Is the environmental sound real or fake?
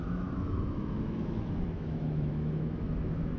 fake